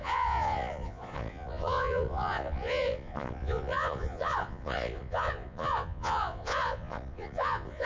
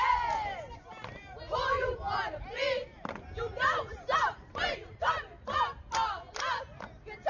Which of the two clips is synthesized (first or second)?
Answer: first